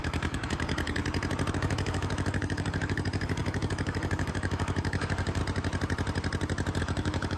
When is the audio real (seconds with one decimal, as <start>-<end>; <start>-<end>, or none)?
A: 1.0-1.5; 5.4-6.8